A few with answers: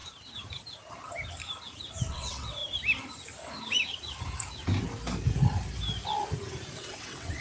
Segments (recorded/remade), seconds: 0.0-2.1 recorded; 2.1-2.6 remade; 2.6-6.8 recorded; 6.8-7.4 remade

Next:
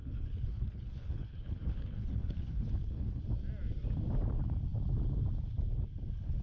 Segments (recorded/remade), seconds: 0.0-3.2 remade; 3.2-6.4 recorded

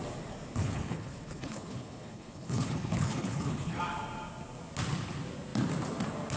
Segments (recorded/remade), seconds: 0.0-0.6 recorded; 0.6-3.8 remade; 3.8-6.4 recorded